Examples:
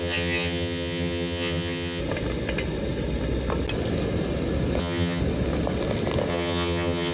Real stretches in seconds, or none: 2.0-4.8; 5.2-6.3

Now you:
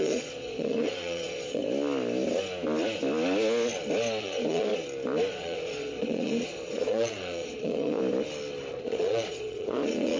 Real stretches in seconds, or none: 1.6-4.2; 4.7-5.3; 8.0-8.7

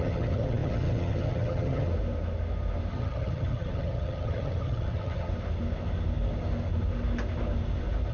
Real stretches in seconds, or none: 1.9-2.9; 5.3-8.1

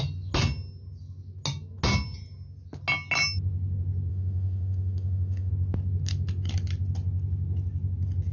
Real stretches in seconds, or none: 0.0-4.1; 5.5-8.3

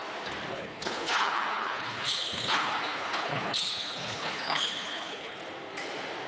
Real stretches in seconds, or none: 0.0-0.5; 5.4-6.3